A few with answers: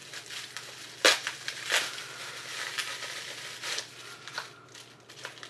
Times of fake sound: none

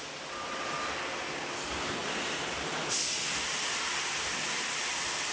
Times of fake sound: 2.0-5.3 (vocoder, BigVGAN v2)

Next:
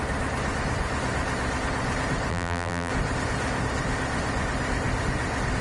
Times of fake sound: 2.3-2.9 (vocoder, BigVGAN v2)

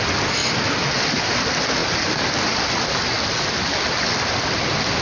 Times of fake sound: none

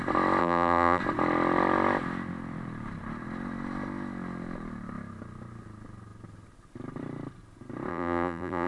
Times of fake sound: 0.4-1.0 (vocoder, BigVGAN v2); 7.9-8.7

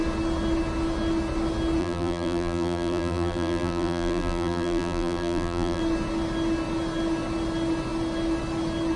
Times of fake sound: 1.8-5.8 (vocoder, BigVGAN v2)

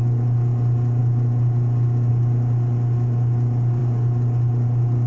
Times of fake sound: none